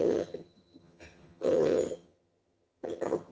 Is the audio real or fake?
fake